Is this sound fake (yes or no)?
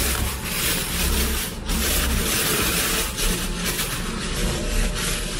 no